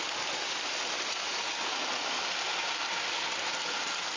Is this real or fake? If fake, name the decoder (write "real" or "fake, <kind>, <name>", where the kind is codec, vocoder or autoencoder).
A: real